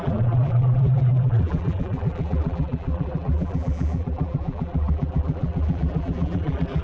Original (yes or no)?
no